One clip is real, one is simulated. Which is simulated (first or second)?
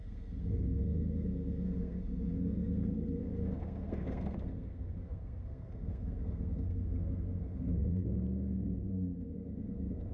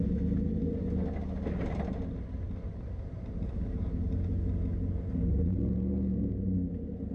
first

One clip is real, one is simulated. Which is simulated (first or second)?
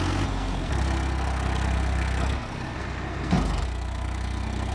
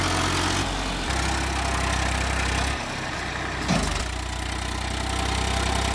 first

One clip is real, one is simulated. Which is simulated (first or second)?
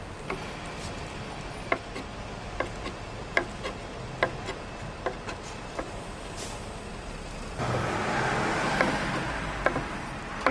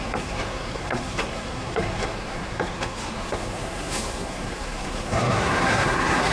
second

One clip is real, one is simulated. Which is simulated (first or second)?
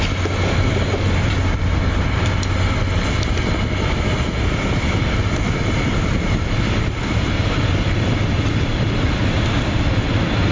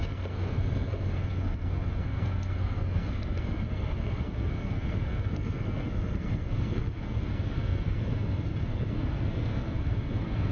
second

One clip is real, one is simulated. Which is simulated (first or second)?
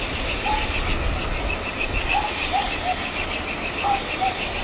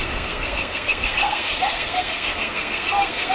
second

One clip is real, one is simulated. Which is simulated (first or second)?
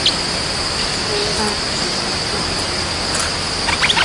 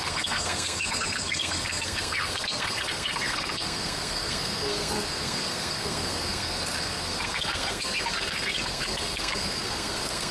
second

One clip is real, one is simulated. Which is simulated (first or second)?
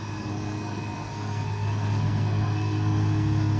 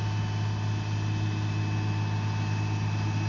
first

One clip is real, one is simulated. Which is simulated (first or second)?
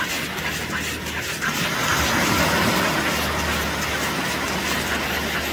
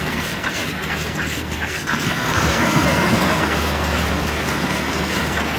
second